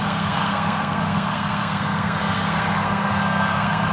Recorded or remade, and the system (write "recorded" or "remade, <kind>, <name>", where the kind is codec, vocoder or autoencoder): remade, codec, SNAC